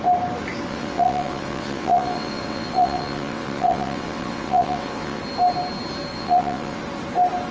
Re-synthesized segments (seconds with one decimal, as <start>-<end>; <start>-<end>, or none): 0.7-5.2; 6.1-6.8